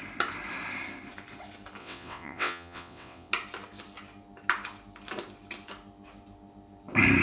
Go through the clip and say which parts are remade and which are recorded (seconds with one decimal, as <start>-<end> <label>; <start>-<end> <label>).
0.0-1.8 recorded; 1.8-3.3 remade; 3.3-7.2 recorded